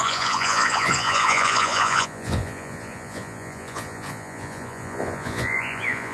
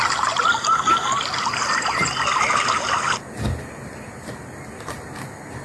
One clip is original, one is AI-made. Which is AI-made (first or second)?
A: first